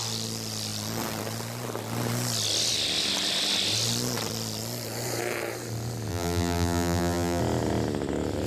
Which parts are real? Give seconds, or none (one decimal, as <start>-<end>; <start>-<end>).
0.0-6.1; 7.4-8.5